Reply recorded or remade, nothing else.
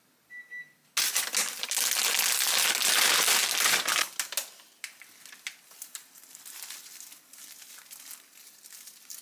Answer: recorded